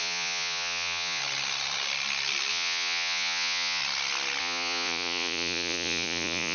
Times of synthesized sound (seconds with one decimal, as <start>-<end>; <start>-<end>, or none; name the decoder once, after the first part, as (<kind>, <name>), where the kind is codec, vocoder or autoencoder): 0.0-1.2 (vocoder, Vocos); 2.5-3.8; 4.4-6.5